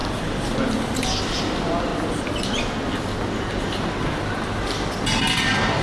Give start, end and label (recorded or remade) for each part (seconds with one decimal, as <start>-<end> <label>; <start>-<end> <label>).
0.0-1.9 remade; 1.9-4.0 recorded; 4.0-5.8 remade